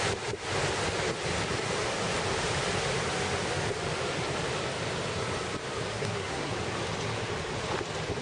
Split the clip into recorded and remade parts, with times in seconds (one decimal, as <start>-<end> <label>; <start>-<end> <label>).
0.0-5.9 recorded; 5.9-6.5 remade; 6.5-8.2 recorded